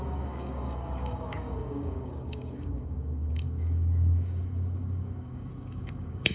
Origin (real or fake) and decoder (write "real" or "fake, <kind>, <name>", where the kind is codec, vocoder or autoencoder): fake, codec, DAC